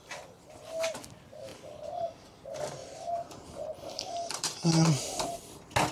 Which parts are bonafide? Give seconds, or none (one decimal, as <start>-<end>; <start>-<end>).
0.0-2.8; 5.4-5.9